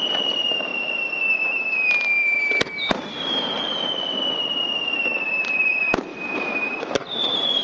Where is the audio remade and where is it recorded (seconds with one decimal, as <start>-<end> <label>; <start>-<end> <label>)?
0.0-0.7 remade; 0.7-5.2 recorded; 5.2-7.6 remade